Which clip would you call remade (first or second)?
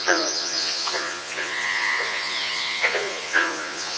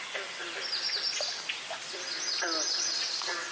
first